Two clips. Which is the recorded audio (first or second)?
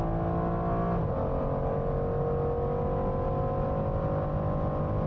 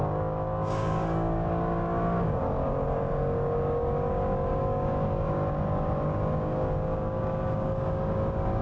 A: first